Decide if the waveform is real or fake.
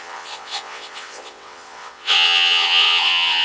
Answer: fake